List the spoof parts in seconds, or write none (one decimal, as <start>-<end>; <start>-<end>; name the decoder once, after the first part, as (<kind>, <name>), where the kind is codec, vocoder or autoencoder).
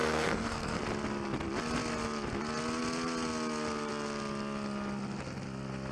0.0-0.8 (codec, SNAC)